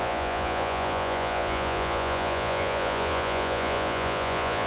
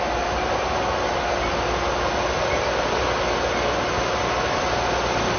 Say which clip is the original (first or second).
second